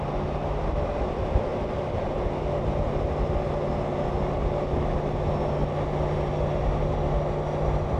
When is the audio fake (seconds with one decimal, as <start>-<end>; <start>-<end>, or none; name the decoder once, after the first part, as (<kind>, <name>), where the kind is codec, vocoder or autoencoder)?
none